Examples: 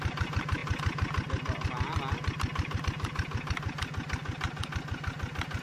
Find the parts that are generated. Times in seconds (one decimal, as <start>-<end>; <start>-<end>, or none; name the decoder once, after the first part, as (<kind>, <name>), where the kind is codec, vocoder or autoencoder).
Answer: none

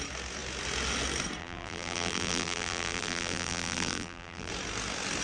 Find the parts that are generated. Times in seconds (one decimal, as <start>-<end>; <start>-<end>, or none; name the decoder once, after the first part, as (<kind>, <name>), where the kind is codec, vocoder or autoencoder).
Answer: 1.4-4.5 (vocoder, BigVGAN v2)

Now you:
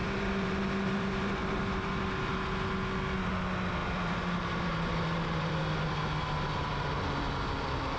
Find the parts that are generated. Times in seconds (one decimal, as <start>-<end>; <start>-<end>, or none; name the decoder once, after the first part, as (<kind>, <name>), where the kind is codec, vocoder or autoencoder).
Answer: 0.0-2.0 (vocoder, BigVGAN v2); 3.8-5.5